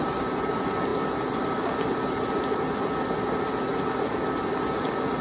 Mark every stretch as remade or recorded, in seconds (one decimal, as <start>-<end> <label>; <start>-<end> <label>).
0.0-5.2 recorded